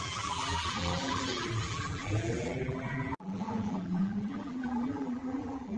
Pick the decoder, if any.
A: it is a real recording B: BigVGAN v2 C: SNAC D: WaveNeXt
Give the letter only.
B